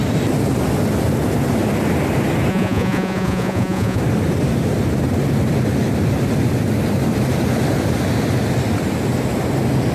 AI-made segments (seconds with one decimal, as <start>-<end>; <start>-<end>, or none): 2.5-4.0